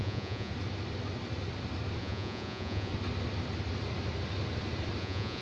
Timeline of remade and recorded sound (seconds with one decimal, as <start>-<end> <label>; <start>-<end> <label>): 0.0-0.5 remade; 0.5-2.0 recorded; 2.0-2.9 remade; 2.9-5.0 recorded; 5.0-5.4 remade